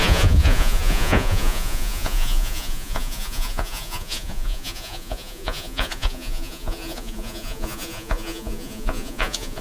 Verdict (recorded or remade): remade